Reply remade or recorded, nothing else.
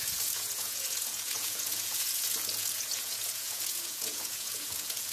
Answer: remade